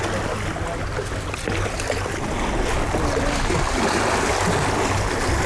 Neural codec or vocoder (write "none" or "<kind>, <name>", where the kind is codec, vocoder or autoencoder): none